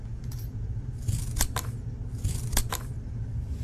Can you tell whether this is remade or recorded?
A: recorded